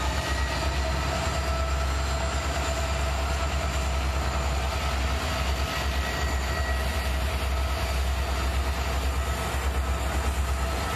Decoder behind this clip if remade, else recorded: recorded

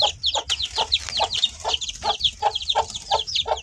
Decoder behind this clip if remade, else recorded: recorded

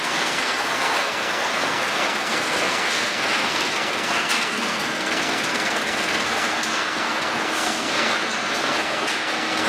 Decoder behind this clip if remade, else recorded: remade, codec, SNAC